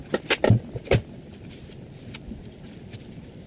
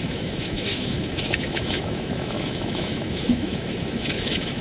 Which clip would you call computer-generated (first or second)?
second